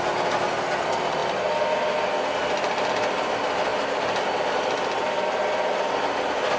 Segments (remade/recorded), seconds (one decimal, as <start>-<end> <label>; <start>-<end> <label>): 0.0-3.7 recorded; 3.7-5.9 remade; 5.9-6.6 recorded